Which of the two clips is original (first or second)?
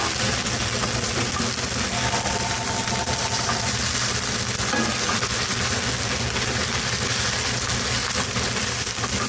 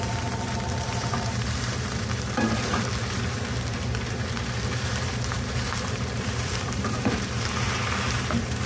first